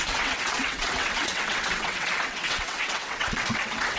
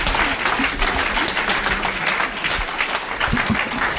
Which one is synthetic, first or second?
first